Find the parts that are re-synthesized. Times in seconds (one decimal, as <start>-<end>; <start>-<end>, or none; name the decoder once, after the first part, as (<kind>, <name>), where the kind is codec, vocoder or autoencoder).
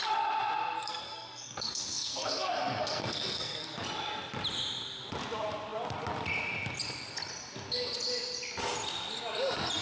0.8-3.7 (codec, SNAC)